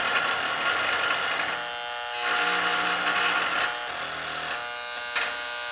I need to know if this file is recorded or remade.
recorded